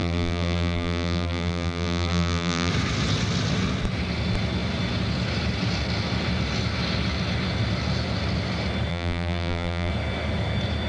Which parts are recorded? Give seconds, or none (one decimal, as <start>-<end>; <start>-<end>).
2.7-8.9; 9.9-10.9